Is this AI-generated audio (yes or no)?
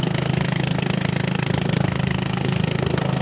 yes